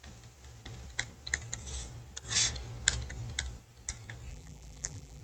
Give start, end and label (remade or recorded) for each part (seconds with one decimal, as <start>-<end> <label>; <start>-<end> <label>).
0.0-4.3 recorded; 4.3-5.2 remade